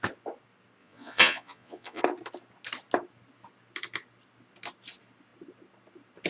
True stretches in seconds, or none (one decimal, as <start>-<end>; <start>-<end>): 0.0-0.8; 2.0-6.3